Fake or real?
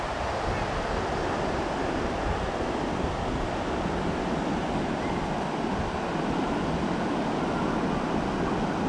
real